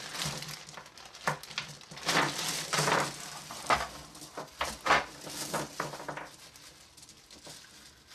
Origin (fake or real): real